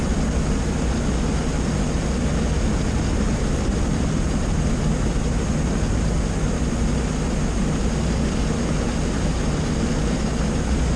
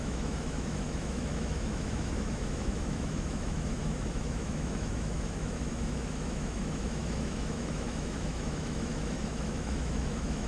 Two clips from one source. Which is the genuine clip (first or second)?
first